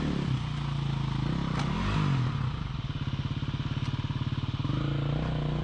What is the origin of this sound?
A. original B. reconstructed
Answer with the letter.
A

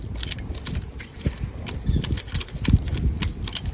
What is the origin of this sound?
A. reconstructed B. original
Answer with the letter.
B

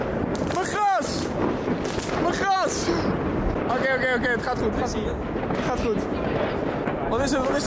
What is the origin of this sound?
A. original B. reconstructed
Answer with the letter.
A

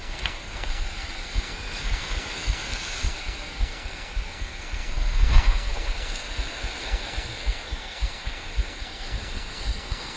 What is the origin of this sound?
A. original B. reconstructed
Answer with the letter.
B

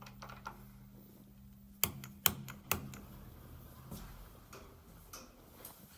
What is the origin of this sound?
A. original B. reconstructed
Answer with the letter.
A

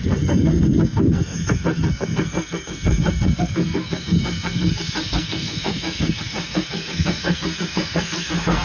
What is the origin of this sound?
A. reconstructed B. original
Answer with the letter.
A